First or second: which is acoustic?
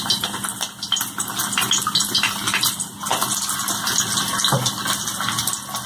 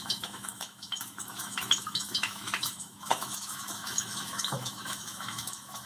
first